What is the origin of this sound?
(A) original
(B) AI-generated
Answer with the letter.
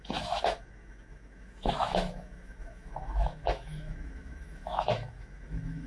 B